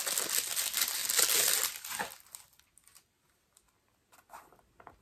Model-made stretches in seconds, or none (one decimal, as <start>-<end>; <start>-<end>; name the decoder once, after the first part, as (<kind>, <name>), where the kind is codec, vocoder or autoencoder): none